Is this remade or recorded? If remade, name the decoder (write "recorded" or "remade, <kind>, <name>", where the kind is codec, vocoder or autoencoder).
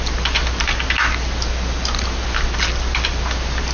recorded